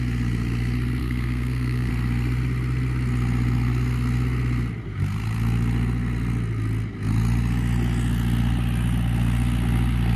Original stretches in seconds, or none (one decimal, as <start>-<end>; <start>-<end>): 0.0-1.0; 1.9-10.2

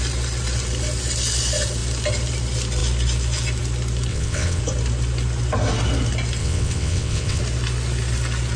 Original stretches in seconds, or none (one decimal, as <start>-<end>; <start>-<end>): 0.0-4.1; 4.6-6.4; 7.4-8.6

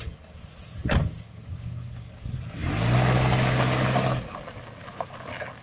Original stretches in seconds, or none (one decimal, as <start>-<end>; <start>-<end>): 0.0-1.0; 2.1-5.6

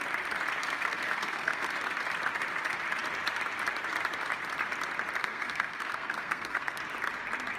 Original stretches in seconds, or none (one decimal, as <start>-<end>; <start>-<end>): 0.0-0.6; 1.7-5.2; 6.8-7.6

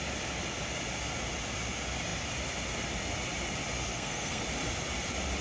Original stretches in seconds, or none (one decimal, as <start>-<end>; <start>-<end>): 0.0-3.9; 4.4-5.4